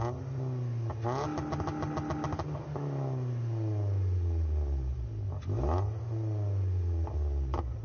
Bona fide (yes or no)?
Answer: yes